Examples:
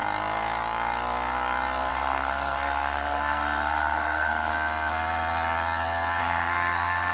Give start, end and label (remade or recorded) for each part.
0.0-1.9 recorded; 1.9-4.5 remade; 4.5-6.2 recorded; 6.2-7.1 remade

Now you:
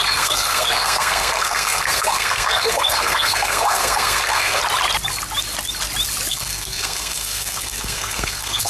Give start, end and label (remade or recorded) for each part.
0.0-4.6 remade; 4.6-6.3 recorded; 6.3-8.7 remade

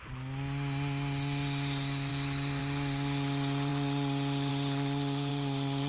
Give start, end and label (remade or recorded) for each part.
0.0-5.3 recorded; 5.3-5.9 remade

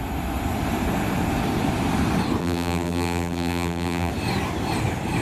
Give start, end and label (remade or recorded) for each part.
0.0-2.4 recorded; 2.4-4.1 remade; 4.1-5.2 recorded